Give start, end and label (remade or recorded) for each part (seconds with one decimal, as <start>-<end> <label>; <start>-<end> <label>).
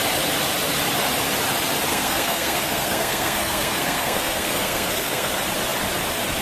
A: 0.0-1.9 recorded; 1.9-5.3 remade; 5.3-6.4 recorded